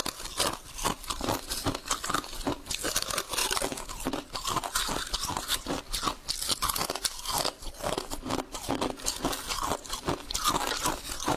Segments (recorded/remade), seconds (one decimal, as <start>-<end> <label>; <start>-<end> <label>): 0.0-3.4 recorded; 3.4-5.8 remade; 5.8-11.4 recorded